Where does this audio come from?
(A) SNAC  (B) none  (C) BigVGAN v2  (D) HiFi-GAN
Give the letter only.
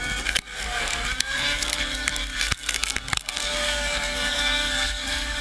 A